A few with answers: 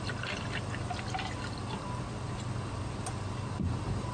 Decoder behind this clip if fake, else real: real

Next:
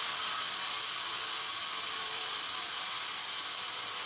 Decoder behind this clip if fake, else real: real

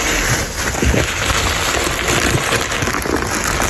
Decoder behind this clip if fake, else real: real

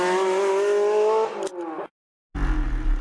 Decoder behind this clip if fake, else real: real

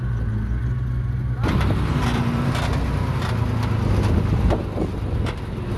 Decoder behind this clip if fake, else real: real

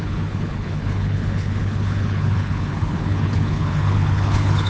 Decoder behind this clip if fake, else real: fake, codec, HILCodec